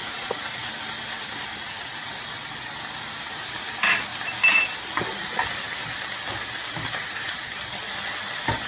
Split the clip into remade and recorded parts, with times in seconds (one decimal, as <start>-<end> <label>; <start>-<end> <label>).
0.0-0.7 remade; 0.7-1.6 recorded; 1.6-2.1 remade; 2.1-8.7 recorded